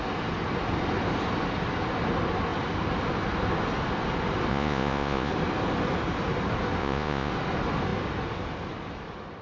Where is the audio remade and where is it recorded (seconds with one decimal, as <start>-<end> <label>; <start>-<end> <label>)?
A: 0.0-4.5 recorded; 4.5-5.3 remade; 5.3-6.8 recorded; 6.8-7.3 remade; 7.3-9.4 recorded